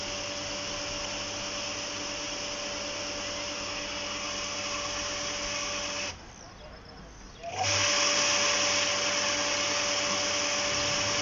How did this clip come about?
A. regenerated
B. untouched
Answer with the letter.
B